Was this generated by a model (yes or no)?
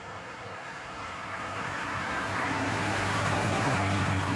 yes